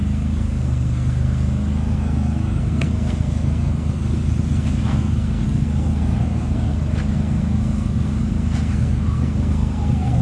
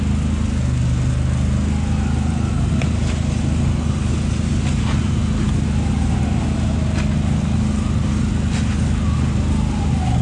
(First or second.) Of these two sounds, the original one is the second